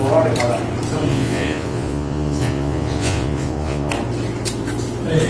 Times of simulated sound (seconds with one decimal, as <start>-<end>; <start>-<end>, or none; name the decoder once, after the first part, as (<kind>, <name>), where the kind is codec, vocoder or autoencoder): 1.1-3.9 (vocoder, Vocos)